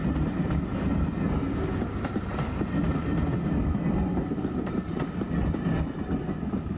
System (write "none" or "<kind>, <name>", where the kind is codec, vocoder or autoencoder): none